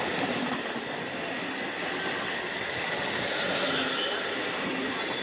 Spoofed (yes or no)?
no